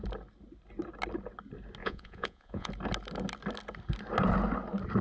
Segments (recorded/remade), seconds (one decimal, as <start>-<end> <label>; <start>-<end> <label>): 0.0-1.8 recorded; 1.8-2.7 remade; 2.7-5.0 recorded